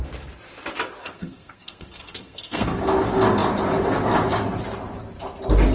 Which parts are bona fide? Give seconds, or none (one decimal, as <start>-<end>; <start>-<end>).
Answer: 0.0-1.0; 2.8-5.7